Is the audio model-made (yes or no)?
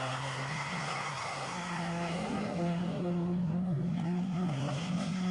yes